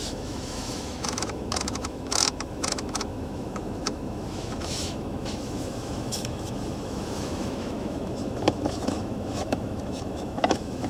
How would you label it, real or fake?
fake